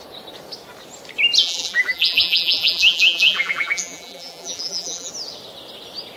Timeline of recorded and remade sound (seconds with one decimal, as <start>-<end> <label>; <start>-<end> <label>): 0.0-1.4 recorded; 1.4-5.1 remade; 5.1-6.2 recorded

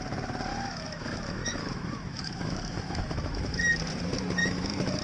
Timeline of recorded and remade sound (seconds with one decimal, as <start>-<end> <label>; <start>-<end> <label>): 0.0-0.5 recorded; 0.5-3.5 remade; 3.5-4.4 recorded; 4.4-5.0 remade

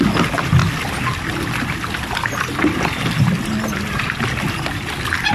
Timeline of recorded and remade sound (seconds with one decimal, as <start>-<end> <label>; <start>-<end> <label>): 0.0-5.3 recorded

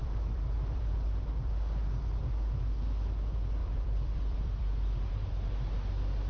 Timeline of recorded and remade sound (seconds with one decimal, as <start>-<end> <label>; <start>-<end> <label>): 0.0-1.5 remade; 1.5-3.6 recorded; 3.6-5.0 remade; 5.0-6.3 recorded

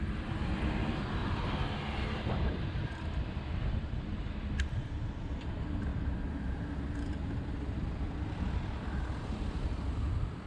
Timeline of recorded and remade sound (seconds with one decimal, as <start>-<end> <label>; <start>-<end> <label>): 0.0-1.2 remade; 1.2-2.4 recorded; 2.4-5.9 remade; 5.9-8.4 recorded; 8.4-10.5 remade

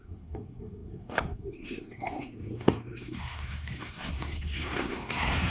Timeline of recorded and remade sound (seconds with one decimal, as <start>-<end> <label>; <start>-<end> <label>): 0.0-5.5 remade